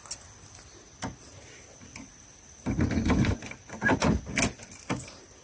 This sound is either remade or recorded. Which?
recorded